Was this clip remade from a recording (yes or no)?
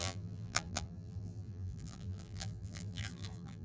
yes